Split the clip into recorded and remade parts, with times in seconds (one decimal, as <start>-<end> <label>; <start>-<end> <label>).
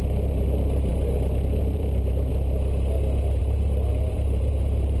0.0-0.9 remade; 0.9-1.6 recorded; 1.6-2.3 remade; 2.3-3.4 recorded; 3.4-5.0 remade